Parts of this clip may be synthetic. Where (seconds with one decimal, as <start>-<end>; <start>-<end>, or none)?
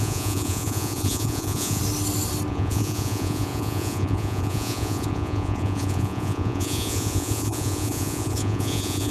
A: 0.0-1.8; 2.5-9.1